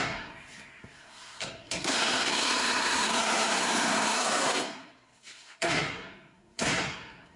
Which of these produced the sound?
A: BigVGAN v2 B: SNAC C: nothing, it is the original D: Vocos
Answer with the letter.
B